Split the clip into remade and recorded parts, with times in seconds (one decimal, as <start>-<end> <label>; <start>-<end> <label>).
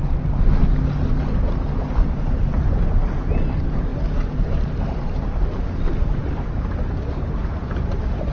0.0-8.3 recorded